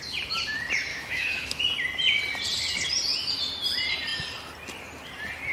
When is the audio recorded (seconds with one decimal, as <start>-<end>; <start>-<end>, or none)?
0.0-0.9; 1.6-5.5